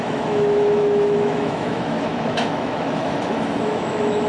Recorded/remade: remade